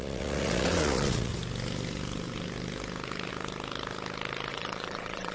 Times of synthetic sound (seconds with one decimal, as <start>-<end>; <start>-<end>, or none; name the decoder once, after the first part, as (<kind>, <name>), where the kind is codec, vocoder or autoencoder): 0.0-1.3 (vocoder, WaveNeXt); 4.5-5.3